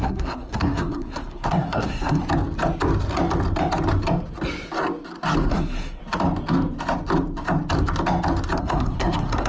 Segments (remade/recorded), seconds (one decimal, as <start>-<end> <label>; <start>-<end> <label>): 0.0-2.2 remade; 2.2-5.5 recorded; 5.5-6.0 remade; 6.0-8.6 recorded; 8.6-9.5 remade